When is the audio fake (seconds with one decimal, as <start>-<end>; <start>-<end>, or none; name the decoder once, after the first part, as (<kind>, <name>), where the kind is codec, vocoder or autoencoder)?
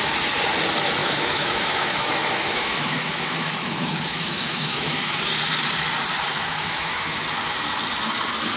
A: 1.0-5.2 (autoencoder, DAC-VAE); 6.3-7.2